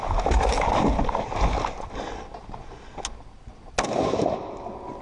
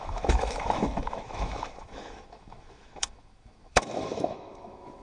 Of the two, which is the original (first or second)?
first